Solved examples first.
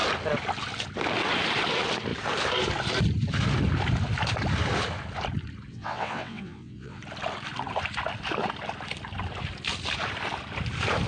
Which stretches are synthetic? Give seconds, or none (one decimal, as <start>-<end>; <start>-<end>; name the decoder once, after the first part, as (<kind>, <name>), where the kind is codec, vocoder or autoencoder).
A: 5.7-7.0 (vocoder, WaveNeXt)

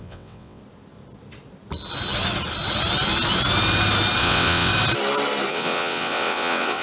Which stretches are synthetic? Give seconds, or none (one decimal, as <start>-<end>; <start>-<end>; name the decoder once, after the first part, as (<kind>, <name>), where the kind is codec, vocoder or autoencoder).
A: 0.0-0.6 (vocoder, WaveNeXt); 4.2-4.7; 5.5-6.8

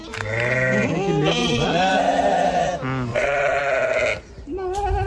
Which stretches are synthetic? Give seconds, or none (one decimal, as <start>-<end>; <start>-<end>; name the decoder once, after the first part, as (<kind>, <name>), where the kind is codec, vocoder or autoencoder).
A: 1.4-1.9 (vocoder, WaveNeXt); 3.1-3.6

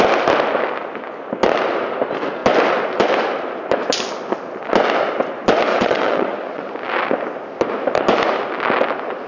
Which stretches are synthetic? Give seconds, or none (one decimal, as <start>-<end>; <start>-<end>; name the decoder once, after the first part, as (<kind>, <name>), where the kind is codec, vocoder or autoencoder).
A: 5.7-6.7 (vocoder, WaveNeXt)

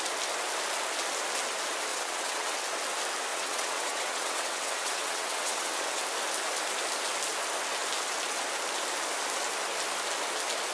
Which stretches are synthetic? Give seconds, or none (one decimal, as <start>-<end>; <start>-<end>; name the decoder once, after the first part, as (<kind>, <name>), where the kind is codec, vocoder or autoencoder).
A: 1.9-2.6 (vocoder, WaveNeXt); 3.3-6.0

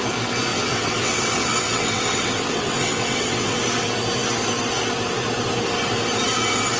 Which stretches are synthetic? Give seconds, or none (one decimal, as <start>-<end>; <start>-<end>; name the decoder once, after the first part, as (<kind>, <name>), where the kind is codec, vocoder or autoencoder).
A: 0.5-3.6 (vocoder, WaveNeXt)